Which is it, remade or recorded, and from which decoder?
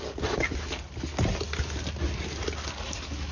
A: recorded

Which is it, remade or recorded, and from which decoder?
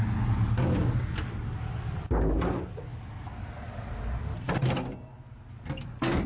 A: recorded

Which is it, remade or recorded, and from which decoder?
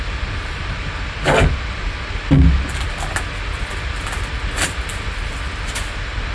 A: recorded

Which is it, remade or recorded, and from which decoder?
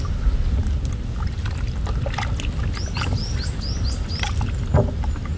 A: recorded